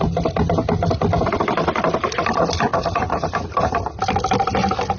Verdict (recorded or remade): recorded